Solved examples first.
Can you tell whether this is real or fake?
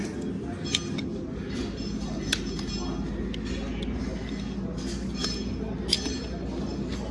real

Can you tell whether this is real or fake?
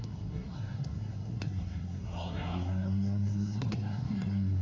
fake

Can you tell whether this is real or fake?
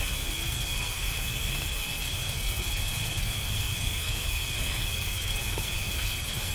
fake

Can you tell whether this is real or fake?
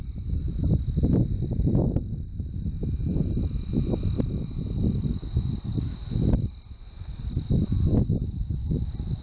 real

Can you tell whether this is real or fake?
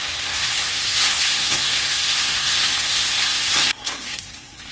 fake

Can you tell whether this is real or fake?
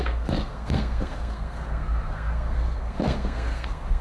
fake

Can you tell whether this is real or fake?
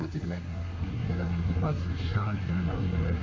fake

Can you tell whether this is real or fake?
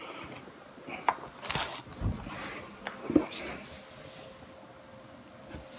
real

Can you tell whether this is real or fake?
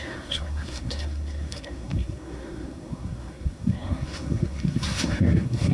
fake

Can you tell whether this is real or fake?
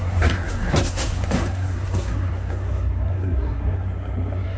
fake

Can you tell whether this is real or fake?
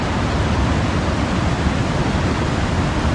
real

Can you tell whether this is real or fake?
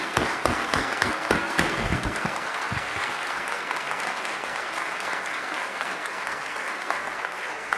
fake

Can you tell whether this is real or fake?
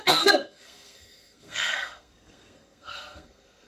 fake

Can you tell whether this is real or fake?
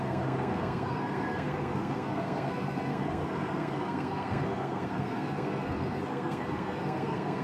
fake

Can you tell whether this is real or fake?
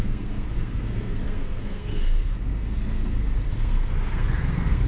fake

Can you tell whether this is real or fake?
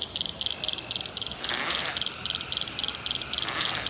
real